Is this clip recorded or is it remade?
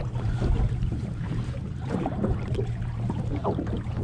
remade